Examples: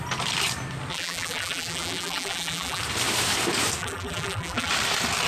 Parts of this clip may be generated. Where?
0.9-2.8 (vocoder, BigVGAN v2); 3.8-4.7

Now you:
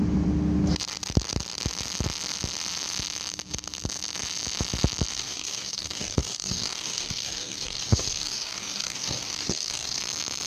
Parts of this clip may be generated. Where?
5.1-10.0 (codec, DAC)

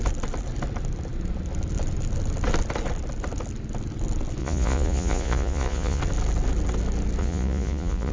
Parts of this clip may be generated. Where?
4.4-6.0 (vocoder, Vocos); 7.2-8.1

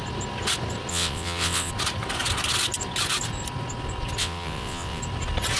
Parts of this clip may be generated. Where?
0.9-1.7 (vocoder, WaveNeXt); 4.2-5.0

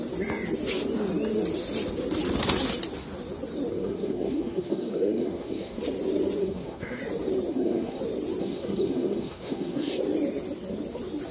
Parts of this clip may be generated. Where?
3.7-5.8 (codec, SNAC); 6.4-7.0; 7.5-8.0; 8.4-10.0

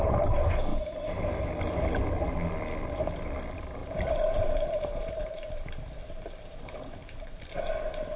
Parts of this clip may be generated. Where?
0.7-1.5 (vocoder, BigVGAN v2); 3.8-6.0; 7.0-7.5

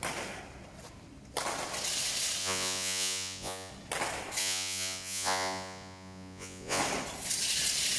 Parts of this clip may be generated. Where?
2.4-3.7 (vocoder, Vocos); 4.4-6.8

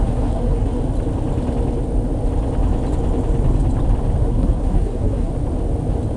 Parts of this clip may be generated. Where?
0.0-0.8 (codec, SNAC); 4.2-5.3